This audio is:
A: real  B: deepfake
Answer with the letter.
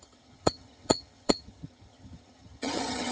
B